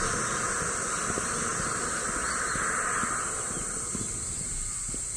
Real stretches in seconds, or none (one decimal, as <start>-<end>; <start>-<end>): 1.5-3.9